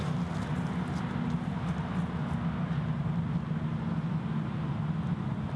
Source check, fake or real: real